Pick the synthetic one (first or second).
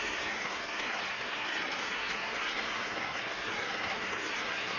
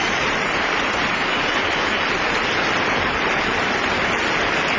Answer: first